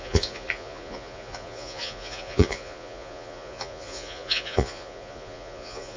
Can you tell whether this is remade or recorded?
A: remade